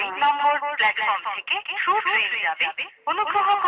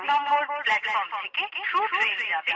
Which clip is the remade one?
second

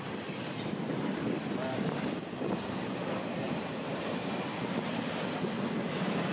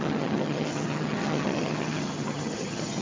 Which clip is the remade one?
second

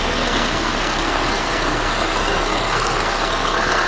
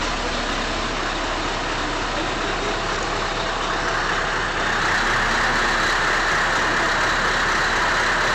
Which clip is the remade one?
first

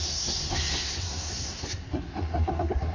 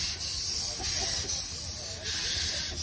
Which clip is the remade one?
first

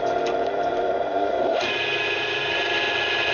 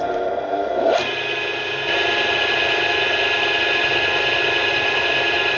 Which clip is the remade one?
first